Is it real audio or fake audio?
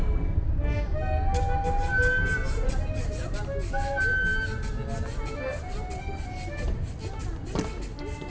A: real